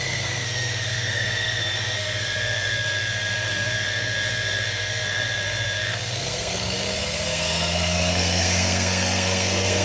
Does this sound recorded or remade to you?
remade